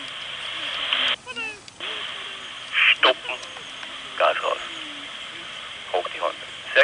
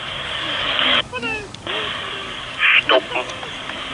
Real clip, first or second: first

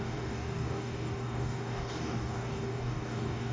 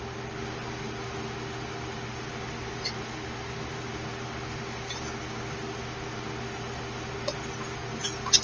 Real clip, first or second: second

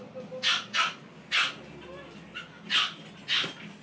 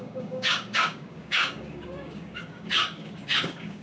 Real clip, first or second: first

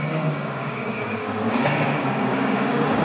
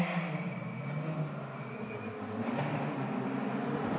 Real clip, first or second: second